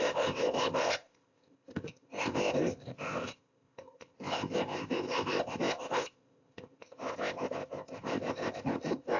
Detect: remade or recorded remade